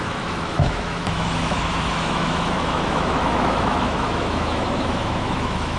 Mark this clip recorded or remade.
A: remade